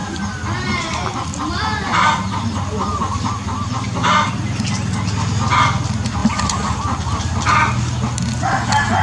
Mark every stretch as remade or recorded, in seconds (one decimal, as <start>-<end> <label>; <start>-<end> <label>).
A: 0.0-4.3 remade; 4.3-6.2 recorded; 6.2-8.4 remade; 8.4-9.0 recorded